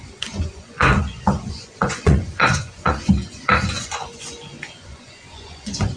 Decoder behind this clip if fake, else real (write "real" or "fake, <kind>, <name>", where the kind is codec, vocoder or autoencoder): fake, vocoder, Vocos